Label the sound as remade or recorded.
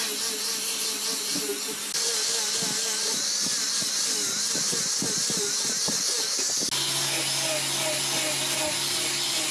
recorded